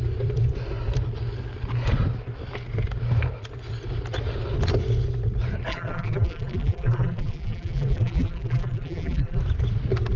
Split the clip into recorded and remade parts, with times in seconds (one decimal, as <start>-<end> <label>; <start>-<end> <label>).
0.0-5.7 recorded; 5.7-9.4 remade; 9.4-10.2 recorded